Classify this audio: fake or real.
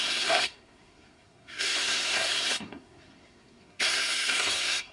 fake